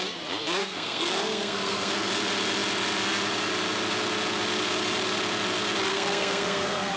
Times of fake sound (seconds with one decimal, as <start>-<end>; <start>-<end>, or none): 0.6-1.9; 5.9-7.0